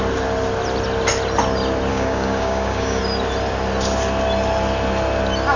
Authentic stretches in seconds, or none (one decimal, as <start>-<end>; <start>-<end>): 0.0-1.9; 3.0-5.6